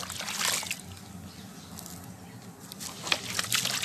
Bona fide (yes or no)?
yes